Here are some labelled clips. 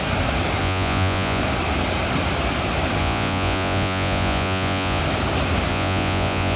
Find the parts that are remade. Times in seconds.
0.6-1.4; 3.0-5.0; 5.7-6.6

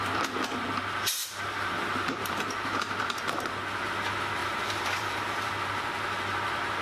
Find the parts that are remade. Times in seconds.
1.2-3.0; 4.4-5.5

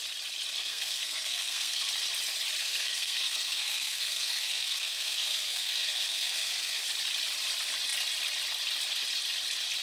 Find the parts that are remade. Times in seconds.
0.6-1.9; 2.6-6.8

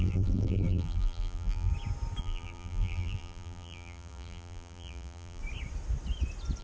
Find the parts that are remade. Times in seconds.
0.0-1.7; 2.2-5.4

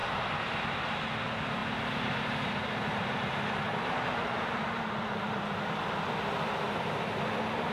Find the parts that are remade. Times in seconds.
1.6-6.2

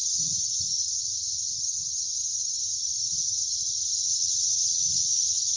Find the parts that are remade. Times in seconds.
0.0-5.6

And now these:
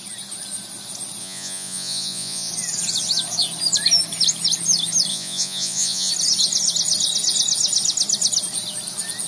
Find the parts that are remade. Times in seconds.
1.2-2.5; 5.1-6.1